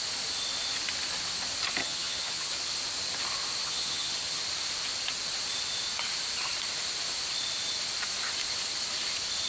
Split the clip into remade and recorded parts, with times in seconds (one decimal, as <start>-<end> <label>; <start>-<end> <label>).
0.0-1.8 recorded; 1.8-2.5 remade; 2.5-3.6 recorded; 3.6-4.4 remade; 4.4-9.5 recorded